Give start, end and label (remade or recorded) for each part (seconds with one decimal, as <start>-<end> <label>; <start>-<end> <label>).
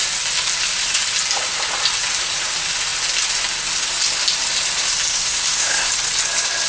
0.0-5.1 recorded; 5.1-5.9 remade; 5.9-6.7 recorded